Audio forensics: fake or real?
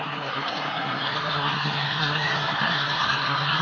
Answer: fake